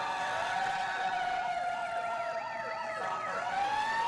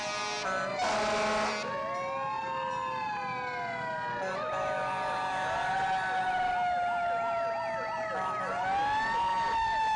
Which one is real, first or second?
second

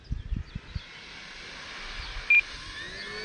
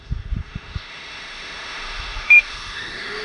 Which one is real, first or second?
first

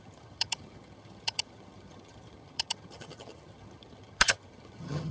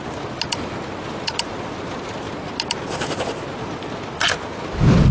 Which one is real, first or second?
second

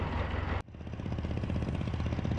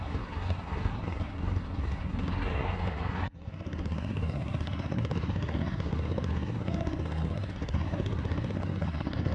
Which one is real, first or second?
first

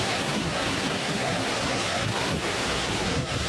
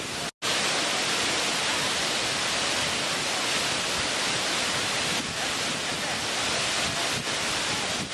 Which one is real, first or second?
second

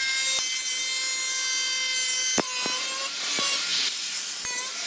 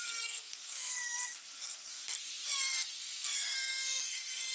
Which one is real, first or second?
first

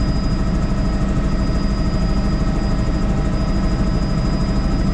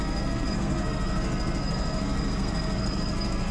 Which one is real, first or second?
first